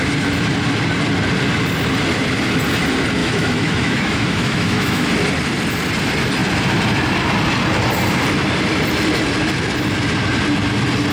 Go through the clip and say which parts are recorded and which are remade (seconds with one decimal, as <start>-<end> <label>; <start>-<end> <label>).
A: 0.0-3.2 recorded; 3.2-5.1 remade; 5.1-11.1 recorded